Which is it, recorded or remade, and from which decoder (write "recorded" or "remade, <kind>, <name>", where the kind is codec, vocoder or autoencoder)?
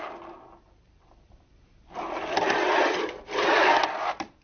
remade, vocoder, BigVGAN v2